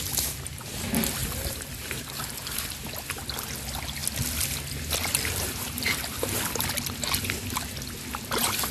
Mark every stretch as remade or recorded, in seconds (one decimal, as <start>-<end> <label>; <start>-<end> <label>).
0.0-1.2 recorded; 1.2-2.0 remade; 2.0-8.7 recorded